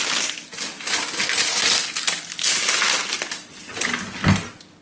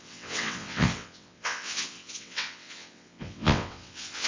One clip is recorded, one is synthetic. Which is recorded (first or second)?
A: first